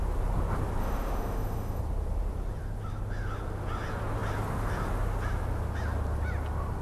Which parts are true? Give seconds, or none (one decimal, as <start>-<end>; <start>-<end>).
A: 0.0-0.8; 1.8-6.8